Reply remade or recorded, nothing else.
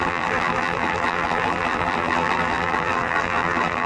remade